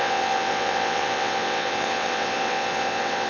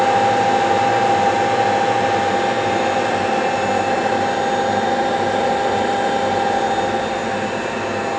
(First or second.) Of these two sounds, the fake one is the first